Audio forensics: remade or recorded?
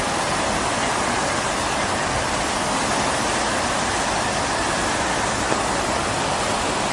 recorded